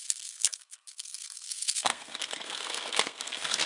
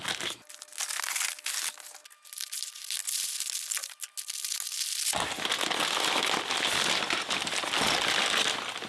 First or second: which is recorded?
second